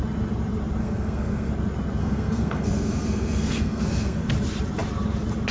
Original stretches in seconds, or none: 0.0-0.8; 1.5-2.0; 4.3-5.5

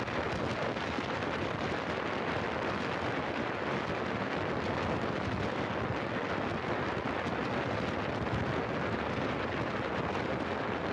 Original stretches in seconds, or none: 0.0-10.9

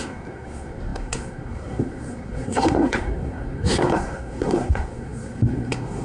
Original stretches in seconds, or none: none

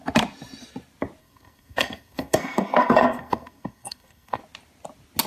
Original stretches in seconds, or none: 0.0-1.2; 4.4-5.3